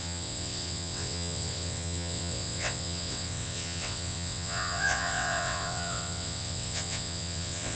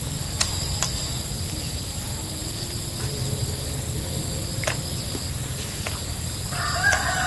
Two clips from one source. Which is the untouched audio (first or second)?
second